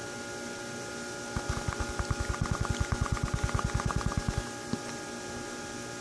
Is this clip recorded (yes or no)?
yes